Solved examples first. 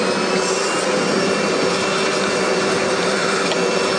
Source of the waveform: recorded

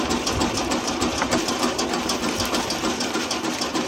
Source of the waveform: recorded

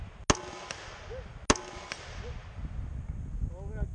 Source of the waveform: recorded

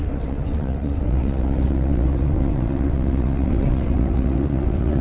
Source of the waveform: remade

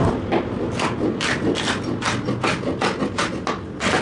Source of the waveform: recorded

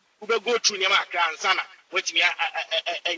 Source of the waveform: recorded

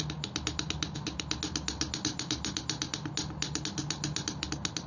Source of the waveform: recorded